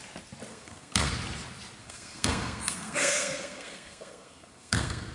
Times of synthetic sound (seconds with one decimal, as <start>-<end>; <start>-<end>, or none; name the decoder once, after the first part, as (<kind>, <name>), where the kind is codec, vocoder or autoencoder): 0.5-1.1 (codec, SNAC); 1.8-5.1